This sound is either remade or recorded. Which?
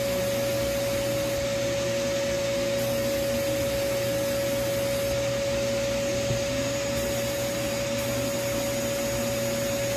recorded